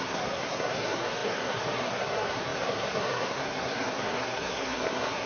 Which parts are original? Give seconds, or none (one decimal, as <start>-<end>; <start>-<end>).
none